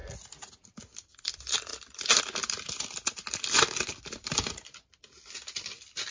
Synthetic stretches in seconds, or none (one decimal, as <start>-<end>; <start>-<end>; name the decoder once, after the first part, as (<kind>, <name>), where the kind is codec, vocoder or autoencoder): 0.5-1.7 (vocoder, BigVGAN v2); 3.9-6.1